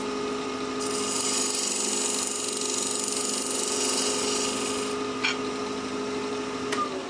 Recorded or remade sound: recorded